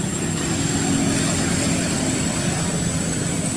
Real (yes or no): yes